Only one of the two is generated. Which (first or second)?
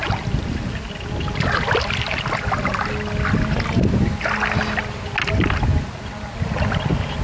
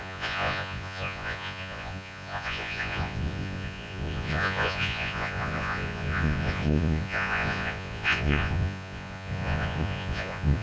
second